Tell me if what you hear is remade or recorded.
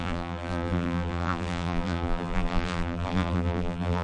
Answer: remade